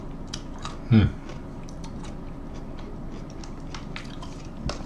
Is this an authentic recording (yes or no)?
yes